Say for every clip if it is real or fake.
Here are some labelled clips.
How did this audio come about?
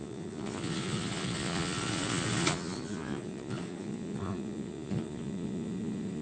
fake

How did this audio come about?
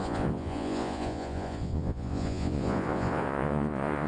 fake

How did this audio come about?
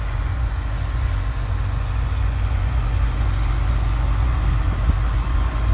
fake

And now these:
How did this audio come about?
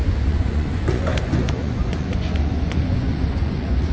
fake